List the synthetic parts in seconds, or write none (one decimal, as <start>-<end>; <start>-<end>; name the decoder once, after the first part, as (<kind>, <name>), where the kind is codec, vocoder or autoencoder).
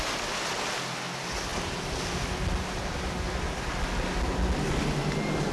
none